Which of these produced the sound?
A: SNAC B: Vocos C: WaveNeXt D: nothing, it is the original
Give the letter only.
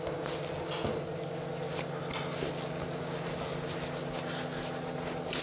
D